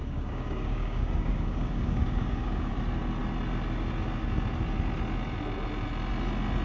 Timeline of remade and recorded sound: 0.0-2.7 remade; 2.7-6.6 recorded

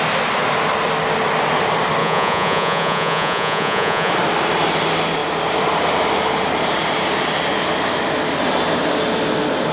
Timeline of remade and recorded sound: 0.0-2.0 recorded; 2.0-4.1 remade; 4.1-9.7 recorded

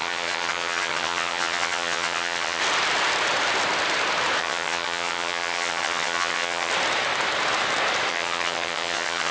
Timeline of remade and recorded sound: 0.0-2.6 remade; 2.6-4.4 recorded; 4.4-6.7 remade; 6.7-8.1 recorded; 8.1-9.3 remade

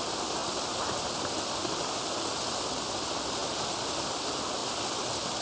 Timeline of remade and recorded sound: 0.0-5.4 recorded

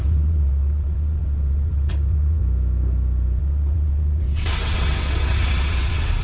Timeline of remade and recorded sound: 0.0-2.4 remade; 2.4-3.4 recorded; 3.4-6.2 remade

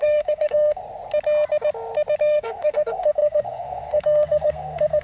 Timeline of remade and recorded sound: 0.0-0.8 remade; 0.8-2.2 recorded; 2.2-5.0 remade

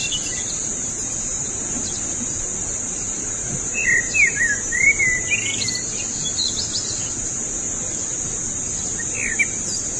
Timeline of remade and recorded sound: 0.0-1.4 remade; 1.4-2.6 recorded; 2.6-3.8 remade; 3.8-10.0 recorded